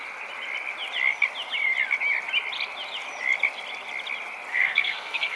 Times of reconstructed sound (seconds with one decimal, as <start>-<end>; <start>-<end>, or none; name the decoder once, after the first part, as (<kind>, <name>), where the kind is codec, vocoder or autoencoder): 4.5-5.4 (codec, SNAC)